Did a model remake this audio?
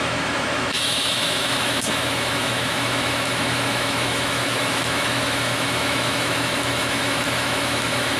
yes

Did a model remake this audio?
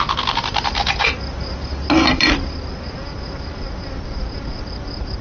no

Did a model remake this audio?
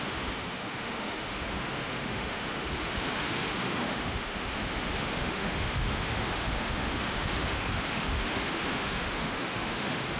yes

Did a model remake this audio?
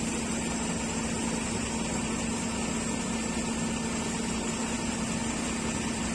no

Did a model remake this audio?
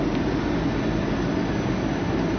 no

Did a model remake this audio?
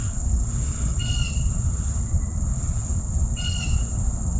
yes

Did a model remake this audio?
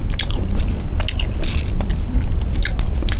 no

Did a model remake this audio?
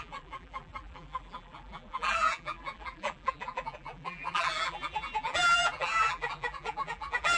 yes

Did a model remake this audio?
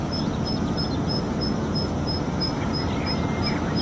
no